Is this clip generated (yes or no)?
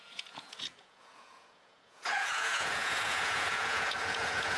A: yes